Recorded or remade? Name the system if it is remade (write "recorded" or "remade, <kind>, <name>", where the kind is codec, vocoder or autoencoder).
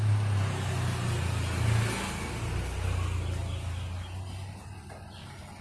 recorded